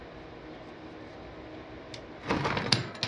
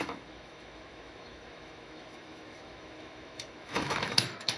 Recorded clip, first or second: first